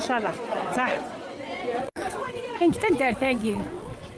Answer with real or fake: fake